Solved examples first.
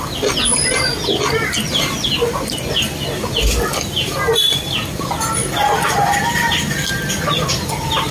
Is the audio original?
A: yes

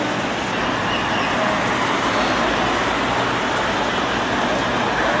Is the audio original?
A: yes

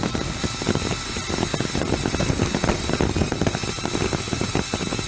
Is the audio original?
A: yes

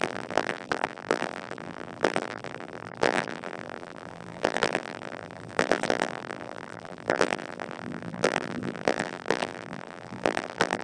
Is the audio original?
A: no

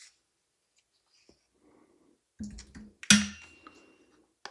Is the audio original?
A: yes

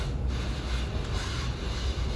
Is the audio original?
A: yes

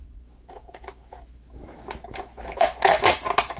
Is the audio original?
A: no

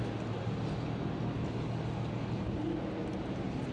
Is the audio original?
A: yes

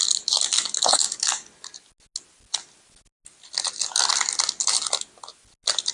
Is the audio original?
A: yes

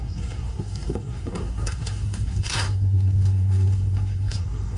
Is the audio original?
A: no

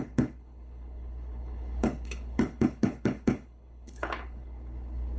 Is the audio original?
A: no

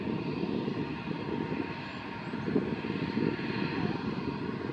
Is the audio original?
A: yes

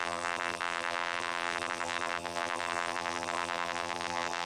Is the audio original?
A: no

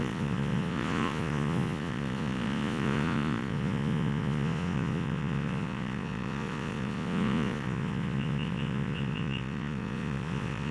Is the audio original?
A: no